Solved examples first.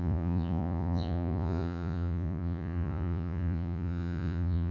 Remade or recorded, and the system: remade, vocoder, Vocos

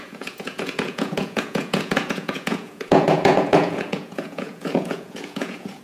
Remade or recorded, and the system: remade, vocoder, Vocos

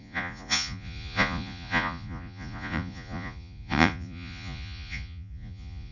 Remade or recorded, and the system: remade, vocoder, Vocos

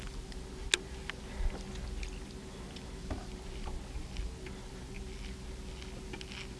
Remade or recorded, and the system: recorded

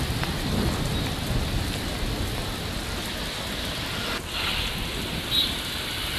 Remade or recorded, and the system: recorded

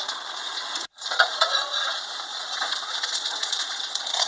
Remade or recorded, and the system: remade, vocoder, Vocos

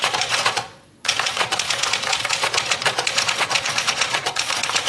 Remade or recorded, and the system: remade, vocoder, Vocos